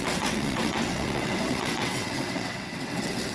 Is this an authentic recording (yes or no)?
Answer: no